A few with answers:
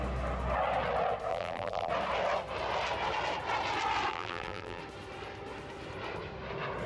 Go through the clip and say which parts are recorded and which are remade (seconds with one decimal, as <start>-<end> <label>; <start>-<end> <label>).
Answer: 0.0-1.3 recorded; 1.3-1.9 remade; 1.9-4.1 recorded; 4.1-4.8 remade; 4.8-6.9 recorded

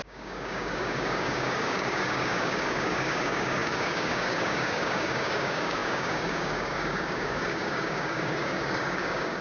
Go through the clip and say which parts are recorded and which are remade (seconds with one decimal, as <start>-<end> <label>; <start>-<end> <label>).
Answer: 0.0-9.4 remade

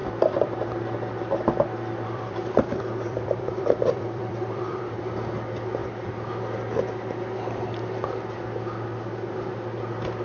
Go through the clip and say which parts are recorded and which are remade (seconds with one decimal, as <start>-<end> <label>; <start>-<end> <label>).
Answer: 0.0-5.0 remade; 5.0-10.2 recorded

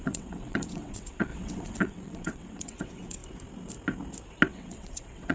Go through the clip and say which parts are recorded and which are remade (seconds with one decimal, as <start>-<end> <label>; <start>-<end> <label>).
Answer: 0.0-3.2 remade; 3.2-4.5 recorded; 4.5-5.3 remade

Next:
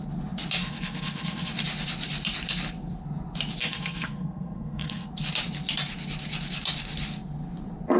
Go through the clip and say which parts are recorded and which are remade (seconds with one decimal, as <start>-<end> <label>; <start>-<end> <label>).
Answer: 0.0-0.6 recorded; 0.6-1.5 remade; 1.5-3.6 recorded; 3.6-5.1 remade; 5.1-8.0 recorded